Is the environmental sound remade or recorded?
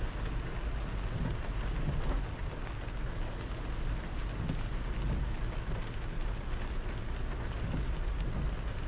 recorded